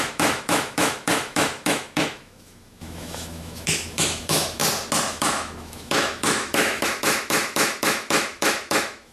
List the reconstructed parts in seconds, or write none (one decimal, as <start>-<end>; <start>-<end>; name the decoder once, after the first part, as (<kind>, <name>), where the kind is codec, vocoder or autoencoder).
0.0-4.6 (autoencoder, DAC-VAE); 5.1-9.1